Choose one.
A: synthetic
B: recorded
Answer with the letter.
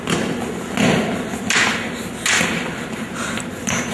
B